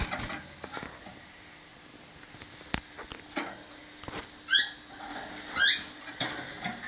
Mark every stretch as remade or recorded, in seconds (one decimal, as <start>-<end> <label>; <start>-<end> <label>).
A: 0.0-6.9 recorded